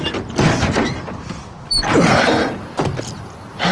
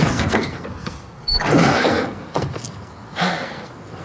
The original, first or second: first